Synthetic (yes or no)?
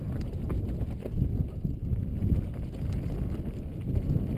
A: no